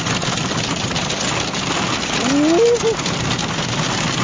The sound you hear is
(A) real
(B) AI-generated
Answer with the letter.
A